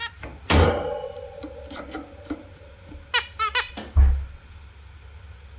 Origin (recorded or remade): recorded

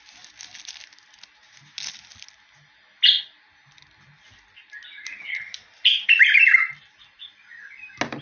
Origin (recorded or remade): recorded